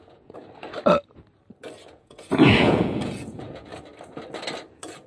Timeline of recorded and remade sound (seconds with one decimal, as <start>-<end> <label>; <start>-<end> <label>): 0.0-0.4 remade; 0.4-1.9 recorded; 1.9-3.7 remade; 3.7-5.1 recorded